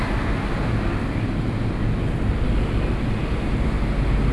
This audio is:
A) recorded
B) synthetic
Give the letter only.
A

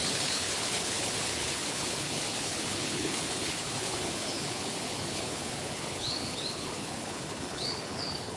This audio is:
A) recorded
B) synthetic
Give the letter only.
B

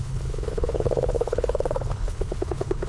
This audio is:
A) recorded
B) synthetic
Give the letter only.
B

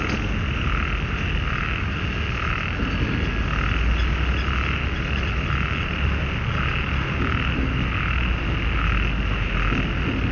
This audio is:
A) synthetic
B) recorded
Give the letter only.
B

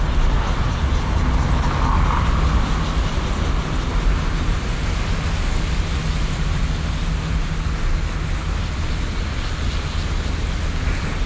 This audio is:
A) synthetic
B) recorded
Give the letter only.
B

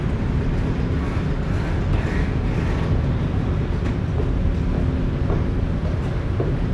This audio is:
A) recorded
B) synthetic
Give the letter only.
A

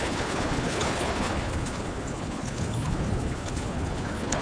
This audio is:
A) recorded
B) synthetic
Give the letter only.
B